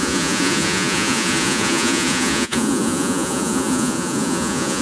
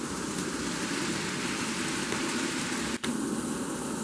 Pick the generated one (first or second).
first